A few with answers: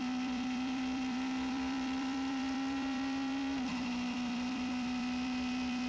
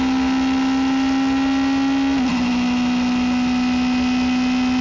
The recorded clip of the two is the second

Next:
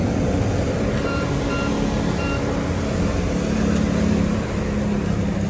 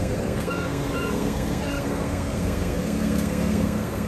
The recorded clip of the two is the first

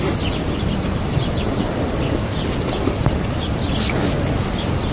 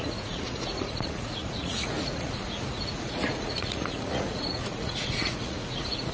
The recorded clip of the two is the first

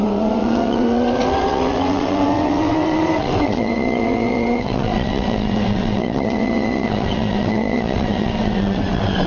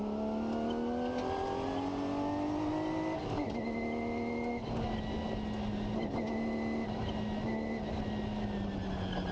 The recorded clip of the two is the second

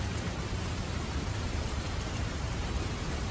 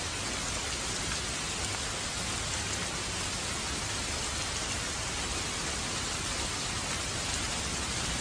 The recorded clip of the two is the second